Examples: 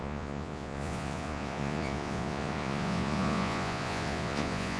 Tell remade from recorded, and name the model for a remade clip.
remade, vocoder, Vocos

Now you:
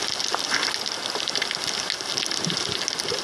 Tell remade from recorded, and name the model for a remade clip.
recorded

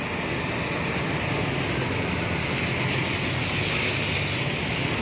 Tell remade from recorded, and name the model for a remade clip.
recorded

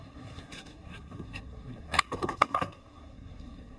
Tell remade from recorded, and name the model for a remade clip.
remade, codec, SNAC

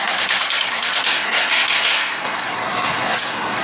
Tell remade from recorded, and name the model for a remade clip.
remade, codec, SNAC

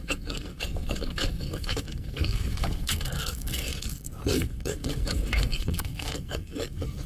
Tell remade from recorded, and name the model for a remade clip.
remade, codec, SNAC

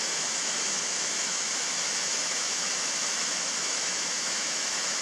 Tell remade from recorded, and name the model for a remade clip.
remade, autoencoder, DAC-VAE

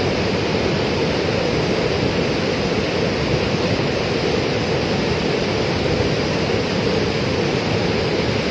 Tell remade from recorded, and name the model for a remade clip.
recorded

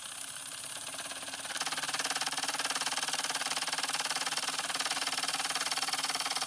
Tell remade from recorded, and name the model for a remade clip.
remade, vocoder, BigVGAN v2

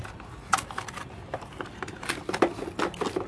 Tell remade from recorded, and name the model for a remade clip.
recorded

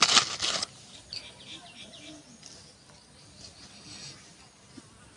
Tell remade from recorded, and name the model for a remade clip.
recorded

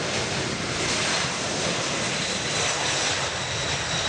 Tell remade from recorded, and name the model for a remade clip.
remade, vocoder, BigVGAN v2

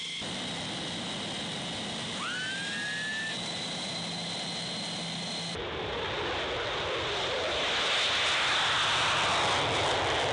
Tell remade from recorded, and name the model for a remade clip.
recorded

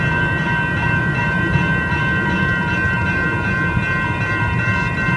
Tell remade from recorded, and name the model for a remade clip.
remade, vocoder, BigVGAN v2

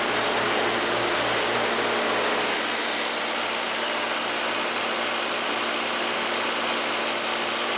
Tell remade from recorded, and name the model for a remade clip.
recorded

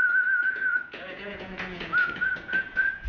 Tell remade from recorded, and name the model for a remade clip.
remade, vocoder, Vocos